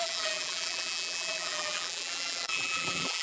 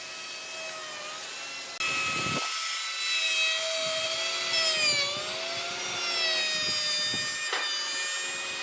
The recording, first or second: second